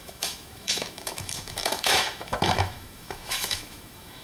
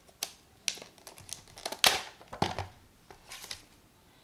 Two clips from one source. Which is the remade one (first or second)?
first